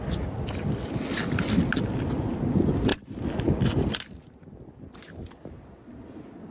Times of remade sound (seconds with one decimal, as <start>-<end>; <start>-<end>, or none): none